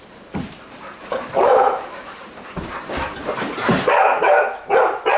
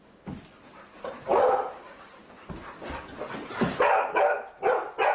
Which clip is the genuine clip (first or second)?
second